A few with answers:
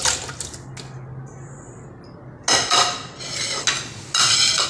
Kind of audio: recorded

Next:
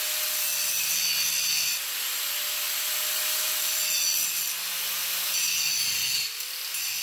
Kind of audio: recorded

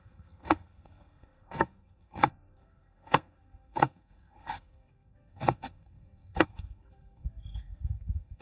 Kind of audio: remade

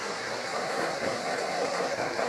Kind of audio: remade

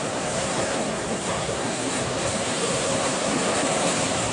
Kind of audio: remade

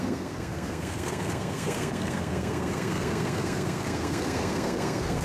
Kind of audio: remade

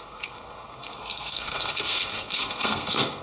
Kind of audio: remade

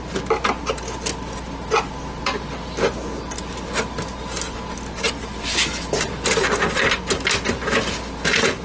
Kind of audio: recorded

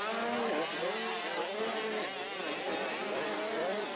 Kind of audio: recorded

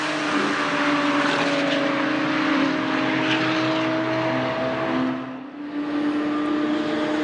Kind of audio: recorded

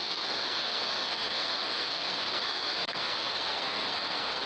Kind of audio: remade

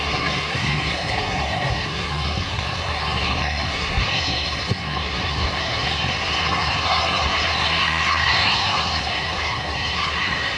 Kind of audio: remade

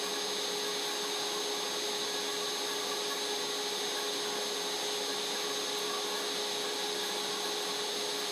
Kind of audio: recorded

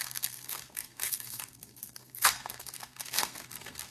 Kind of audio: remade